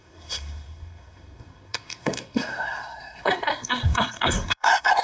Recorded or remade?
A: remade